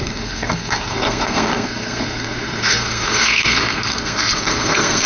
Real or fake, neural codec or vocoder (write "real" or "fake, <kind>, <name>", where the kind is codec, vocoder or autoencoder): fake, codec, SNAC